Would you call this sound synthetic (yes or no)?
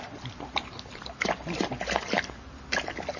no